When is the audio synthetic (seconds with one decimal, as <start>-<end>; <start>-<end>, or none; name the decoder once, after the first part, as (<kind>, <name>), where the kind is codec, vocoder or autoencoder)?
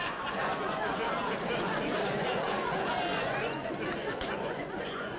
0.0-0.8 (vocoder, Vocos); 1.6-5.2